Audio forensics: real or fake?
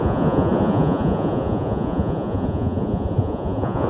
fake